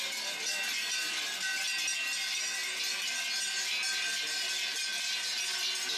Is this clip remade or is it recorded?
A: recorded